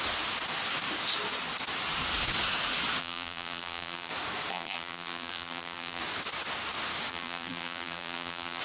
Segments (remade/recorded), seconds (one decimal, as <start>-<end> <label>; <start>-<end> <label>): 0.0-3.0 recorded; 3.0-4.1 remade; 4.1-4.5 recorded; 4.5-6.0 remade; 6.0-7.1 recorded; 7.1-8.6 remade